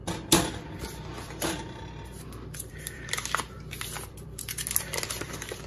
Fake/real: fake